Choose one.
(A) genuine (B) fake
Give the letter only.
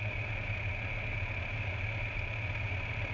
A